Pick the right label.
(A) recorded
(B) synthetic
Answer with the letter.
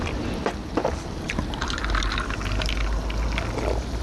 A